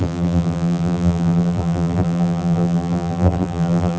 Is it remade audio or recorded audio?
remade